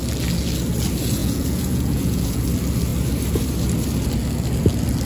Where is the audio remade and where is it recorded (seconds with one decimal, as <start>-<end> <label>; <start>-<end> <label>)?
0.0-1.2 recorded; 1.2-2.4 remade; 2.4-5.1 recorded